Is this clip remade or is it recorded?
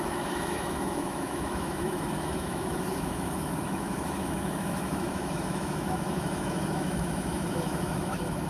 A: remade